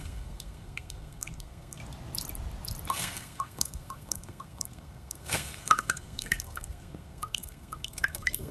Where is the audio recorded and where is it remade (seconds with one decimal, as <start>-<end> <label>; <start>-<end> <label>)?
0.0-1.8 remade; 1.8-2.9 recorded; 2.9-8.5 remade